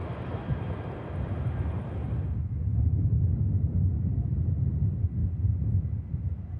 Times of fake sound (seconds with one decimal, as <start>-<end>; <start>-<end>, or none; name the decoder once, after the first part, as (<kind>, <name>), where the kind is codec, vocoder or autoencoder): none